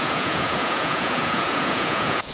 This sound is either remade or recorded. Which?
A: remade